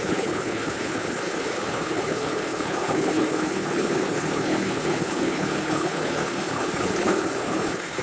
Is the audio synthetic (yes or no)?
yes